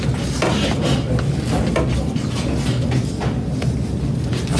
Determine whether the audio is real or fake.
real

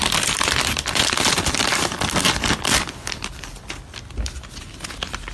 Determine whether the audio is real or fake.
real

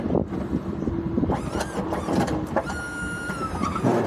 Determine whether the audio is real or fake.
fake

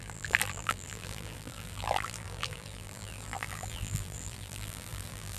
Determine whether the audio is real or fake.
fake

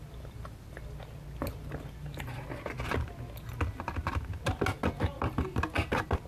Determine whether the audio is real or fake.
real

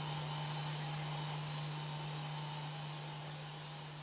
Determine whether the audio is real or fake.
real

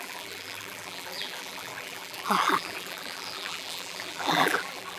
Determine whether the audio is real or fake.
fake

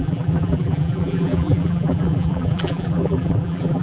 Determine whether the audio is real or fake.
fake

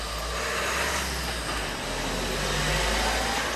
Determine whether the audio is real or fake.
real